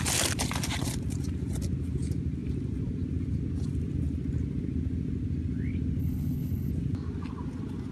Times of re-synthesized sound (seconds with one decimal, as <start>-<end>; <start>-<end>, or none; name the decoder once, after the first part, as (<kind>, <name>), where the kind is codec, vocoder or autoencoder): 6.0-6.7 (codec, HILCodec)